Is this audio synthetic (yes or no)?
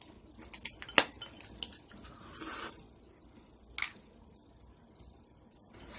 no